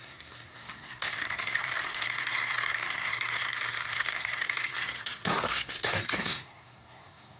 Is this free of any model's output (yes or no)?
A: no